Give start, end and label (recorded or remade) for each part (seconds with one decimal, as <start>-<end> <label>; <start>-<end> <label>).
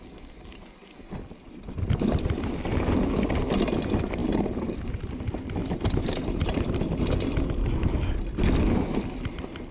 0.0-5.6 recorded; 5.6-6.8 remade; 6.8-9.7 recorded